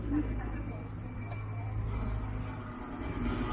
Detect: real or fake real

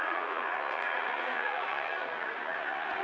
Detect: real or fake fake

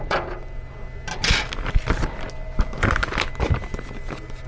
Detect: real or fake real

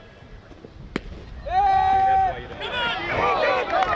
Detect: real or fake real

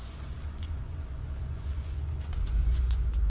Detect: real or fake fake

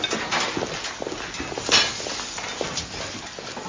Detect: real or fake real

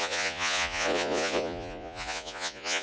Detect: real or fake fake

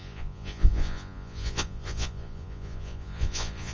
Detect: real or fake fake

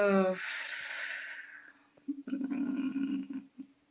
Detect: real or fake real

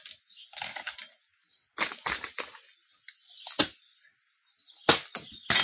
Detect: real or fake real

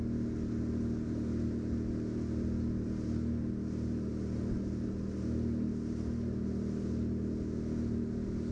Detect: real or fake real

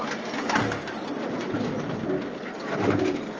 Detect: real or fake real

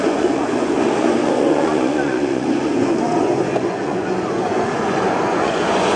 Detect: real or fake fake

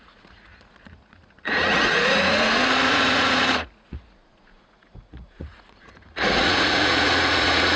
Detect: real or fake fake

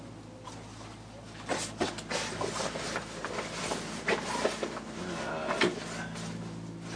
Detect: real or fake real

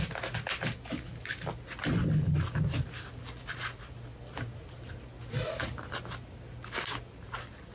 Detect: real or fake real